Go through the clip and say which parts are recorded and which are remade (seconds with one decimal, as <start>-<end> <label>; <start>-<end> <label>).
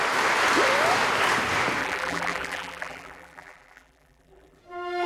0.0-1.8 recorded; 1.8-4.6 remade; 4.6-5.1 recorded